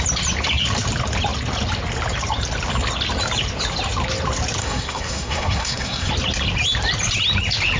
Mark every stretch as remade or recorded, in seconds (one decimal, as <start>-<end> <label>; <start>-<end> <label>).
0.0-4.6 recorded; 4.6-6.1 remade; 6.1-7.8 recorded